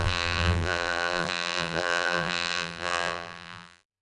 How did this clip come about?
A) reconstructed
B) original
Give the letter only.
A